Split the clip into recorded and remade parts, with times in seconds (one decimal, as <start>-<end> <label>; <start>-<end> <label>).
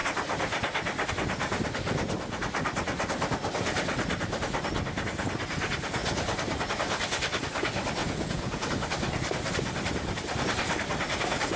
0.0-8.0 recorded; 8.0-8.7 remade; 8.7-11.6 recorded